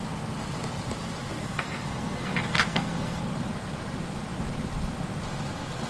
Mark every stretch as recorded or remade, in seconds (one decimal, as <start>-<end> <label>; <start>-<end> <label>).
0.0-1.4 recorded; 1.4-3.2 remade; 3.2-5.9 recorded